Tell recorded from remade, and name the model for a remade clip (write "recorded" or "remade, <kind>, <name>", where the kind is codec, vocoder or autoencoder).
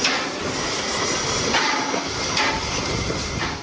recorded